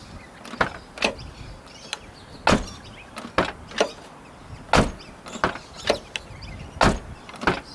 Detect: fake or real real